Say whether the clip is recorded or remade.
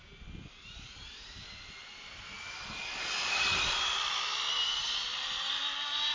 recorded